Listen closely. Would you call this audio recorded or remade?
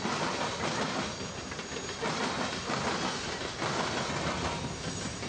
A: recorded